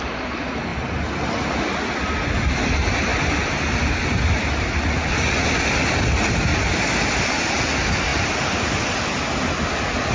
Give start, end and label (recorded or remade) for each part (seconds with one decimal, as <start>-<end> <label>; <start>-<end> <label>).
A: 0.0-10.1 recorded